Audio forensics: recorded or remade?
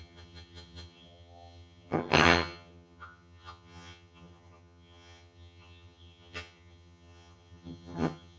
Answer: remade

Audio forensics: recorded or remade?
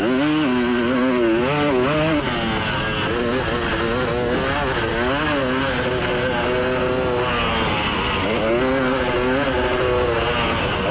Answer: recorded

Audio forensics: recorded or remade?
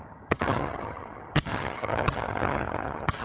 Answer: remade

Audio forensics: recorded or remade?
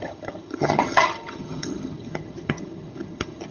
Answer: remade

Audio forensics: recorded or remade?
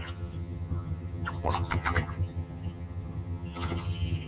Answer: remade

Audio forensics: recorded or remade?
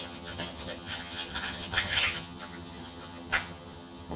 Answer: remade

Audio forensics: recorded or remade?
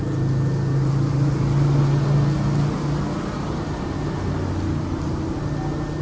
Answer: recorded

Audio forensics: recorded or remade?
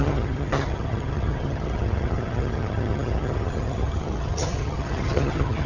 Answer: remade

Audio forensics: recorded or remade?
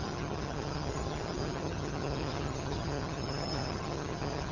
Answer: remade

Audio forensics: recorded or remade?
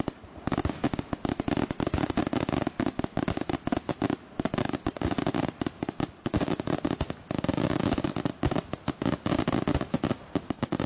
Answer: recorded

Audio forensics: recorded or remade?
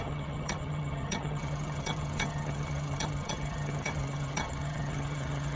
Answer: remade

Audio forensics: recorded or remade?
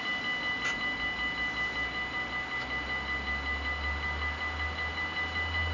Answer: recorded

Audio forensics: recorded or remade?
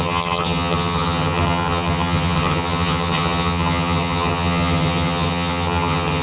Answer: remade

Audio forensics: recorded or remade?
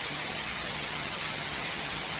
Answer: remade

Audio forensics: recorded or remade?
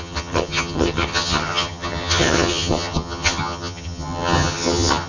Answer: remade